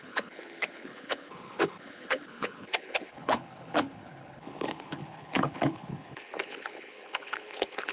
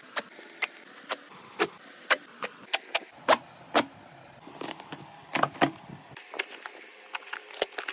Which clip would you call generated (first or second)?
first